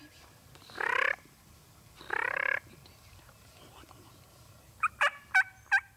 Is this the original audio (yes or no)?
yes